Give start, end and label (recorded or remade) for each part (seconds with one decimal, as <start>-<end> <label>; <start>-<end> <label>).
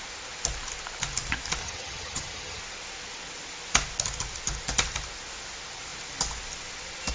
0.0-1.6 recorded; 1.6-2.6 remade; 2.6-7.1 recorded